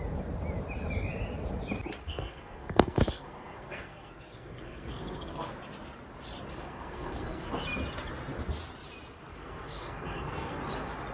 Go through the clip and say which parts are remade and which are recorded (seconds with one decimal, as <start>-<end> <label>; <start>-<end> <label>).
0.0-2.0 recorded; 2.0-5.5 remade; 5.5-6.5 recorded; 6.5-7.5 remade; 7.5-9.3 recorded; 9.3-10.6 remade; 10.6-11.1 recorded